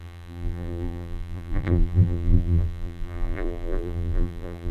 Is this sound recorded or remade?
remade